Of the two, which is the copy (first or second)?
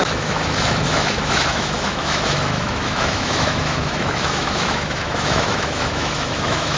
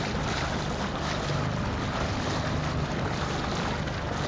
first